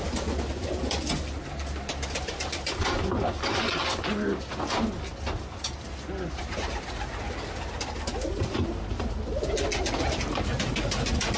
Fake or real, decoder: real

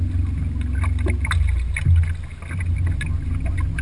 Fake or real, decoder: real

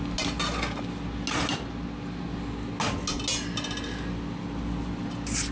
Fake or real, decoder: real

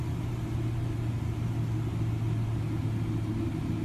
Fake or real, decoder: real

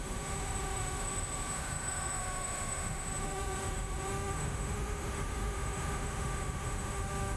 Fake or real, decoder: fake, autoencoder, DAC-VAE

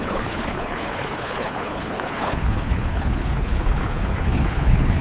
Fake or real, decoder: fake, codec, HILCodec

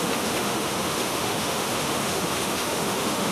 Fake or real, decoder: fake, autoencoder, DAC-VAE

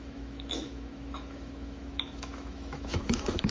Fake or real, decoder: fake, autoencoder, DAC-VAE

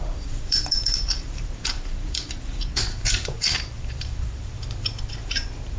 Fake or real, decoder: fake, vocoder, BigVGAN v2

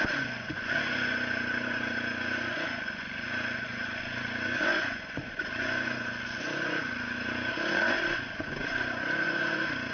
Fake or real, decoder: fake, vocoder, Vocos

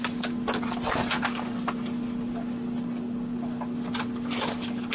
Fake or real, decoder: real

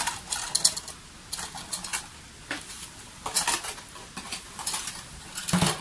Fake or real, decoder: real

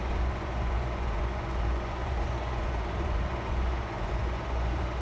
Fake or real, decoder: fake, vocoder, Vocos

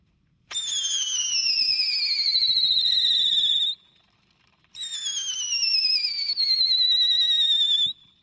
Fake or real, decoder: real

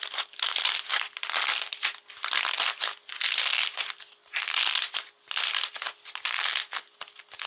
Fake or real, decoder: real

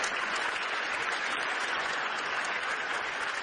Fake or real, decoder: fake, vocoder, Vocos